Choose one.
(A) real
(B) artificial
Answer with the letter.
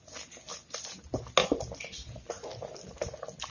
A